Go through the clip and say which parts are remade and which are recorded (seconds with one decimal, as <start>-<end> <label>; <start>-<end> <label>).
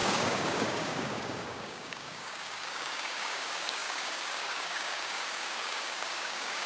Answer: 0.0-6.7 remade